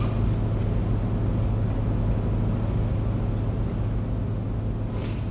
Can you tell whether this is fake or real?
real